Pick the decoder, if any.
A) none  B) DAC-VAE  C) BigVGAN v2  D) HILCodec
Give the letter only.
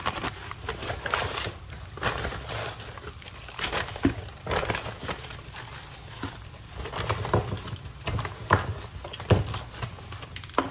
A